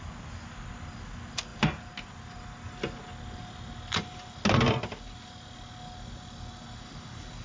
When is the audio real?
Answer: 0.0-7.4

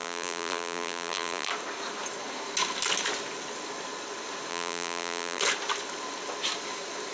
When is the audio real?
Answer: 1.5-4.5; 5.4-7.1

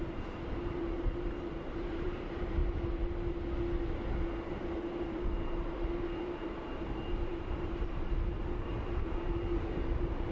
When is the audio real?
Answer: 2.6-4.4

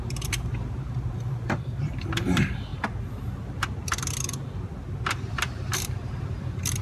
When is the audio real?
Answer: 2.7-5.3

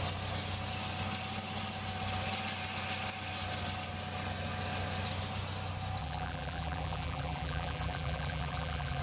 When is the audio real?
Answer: 0.0-6.0

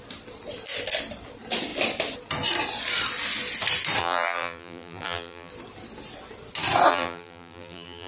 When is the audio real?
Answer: 0.0-4.0; 5.5-6.9